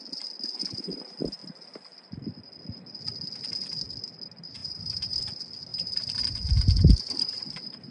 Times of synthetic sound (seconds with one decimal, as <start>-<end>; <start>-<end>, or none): 4.6-5.2; 5.7-7.9